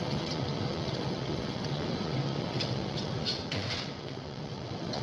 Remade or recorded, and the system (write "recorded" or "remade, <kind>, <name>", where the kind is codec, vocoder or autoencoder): remade, vocoder, WaveNeXt